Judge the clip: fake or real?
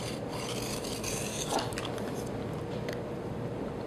fake